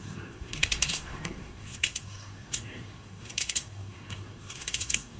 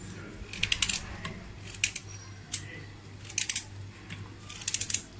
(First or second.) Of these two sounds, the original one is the second